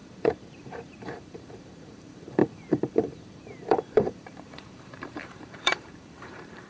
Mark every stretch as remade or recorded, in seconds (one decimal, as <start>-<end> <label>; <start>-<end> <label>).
0.0-6.7 remade